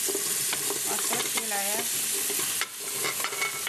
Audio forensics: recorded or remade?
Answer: recorded